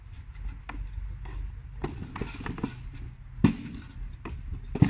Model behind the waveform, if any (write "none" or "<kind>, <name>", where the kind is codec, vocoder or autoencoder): none